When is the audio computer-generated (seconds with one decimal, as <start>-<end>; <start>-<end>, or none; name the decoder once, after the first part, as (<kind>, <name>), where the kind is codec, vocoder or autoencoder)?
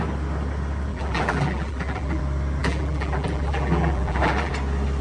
0.9-2.2 (vocoder, BigVGAN v2); 2.6-4.5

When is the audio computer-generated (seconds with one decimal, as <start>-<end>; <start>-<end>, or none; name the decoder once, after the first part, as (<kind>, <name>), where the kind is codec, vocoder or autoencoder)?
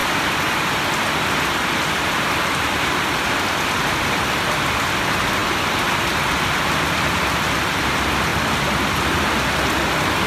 0.0-4.0 (vocoder, BigVGAN v2); 8.3-9.3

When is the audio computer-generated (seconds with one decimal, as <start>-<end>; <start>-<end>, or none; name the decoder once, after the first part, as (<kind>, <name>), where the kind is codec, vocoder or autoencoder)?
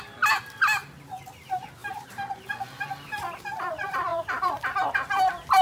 1.8-2.5 (vocoder, BigVGAN v2); 4.1-4.7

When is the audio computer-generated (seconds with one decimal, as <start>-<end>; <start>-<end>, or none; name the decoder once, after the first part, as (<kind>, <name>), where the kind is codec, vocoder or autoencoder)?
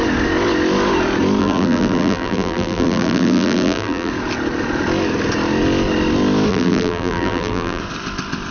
1.4-4.1 (vocoder, BigVGAN v2); 6.5-7.8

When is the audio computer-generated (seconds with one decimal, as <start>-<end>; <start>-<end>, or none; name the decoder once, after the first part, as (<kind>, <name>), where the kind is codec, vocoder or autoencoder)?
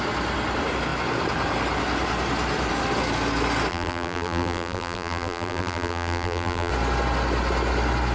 3.7-6.7 (vocoder, BigVGAN v2)